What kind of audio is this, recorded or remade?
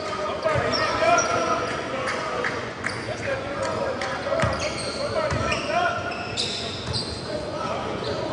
remade